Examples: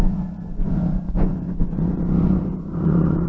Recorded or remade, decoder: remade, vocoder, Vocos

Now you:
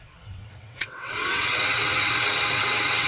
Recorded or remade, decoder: remade, vocoder, WaveNeXt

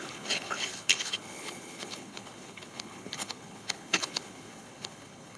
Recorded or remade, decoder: remade, codec, HILCodec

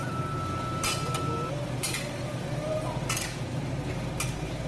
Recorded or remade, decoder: recorded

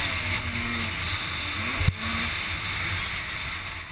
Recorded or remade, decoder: recorded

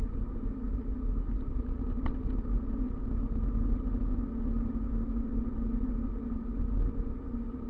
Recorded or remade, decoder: recorded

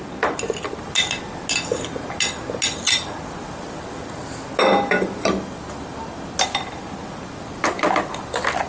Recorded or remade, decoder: recorded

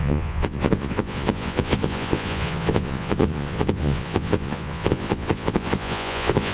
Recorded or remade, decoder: remade, vocoder, Vocos